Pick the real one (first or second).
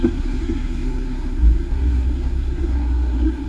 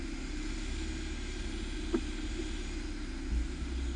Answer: second